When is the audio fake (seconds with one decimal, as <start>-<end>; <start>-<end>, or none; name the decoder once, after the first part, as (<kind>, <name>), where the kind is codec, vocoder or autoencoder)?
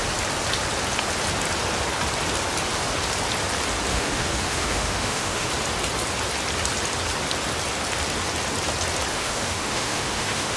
3.9-5.5 (autoencoder, DAC-VAE); 9.1-10.6